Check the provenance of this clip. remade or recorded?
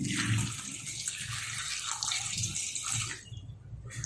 recorded